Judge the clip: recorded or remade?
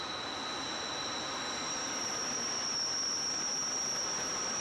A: recorded